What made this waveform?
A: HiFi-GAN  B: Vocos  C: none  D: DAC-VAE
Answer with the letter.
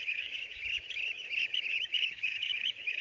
D